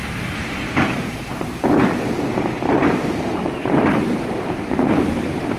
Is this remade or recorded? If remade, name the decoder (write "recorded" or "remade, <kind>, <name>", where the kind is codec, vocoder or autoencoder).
remade, vocoder, BigVGAN v2